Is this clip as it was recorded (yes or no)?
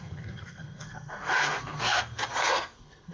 no